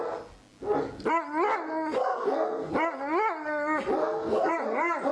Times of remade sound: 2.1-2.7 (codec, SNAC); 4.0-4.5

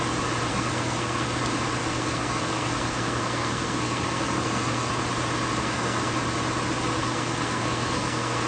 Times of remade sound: 0.5-1.4 (codec, SNAC); 1.8-4.9; 5.6-6.1; 7.0-8.5

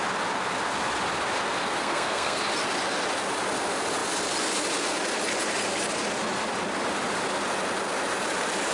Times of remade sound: 1.8-2.4 (codec, SNAC)

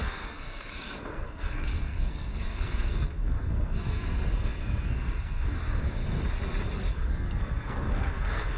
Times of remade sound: 0.0-6.0 (codec, SNAC); 6.9-8.6

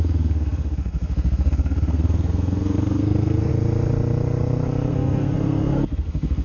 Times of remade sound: 0.0-3.5 (codec, SNAC); 4.9-6.4

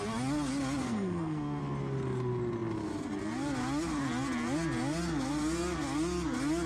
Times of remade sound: 0.8-1.6 (codec, SNAC)

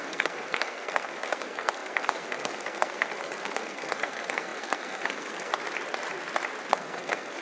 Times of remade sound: 0.0-5.5 (codec, SNAC); 6.7-7.4

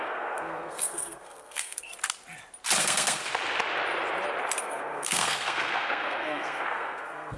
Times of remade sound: 0.0-1.9 (codec, SNAC); 2.8-3.2; 4.6-7.4